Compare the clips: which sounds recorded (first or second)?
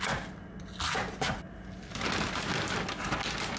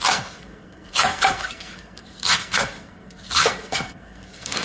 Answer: first